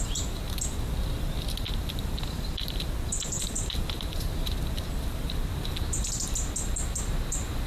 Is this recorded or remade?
remade